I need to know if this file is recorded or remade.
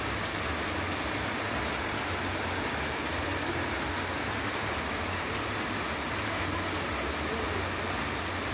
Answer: recorded